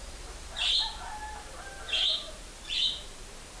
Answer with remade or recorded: remade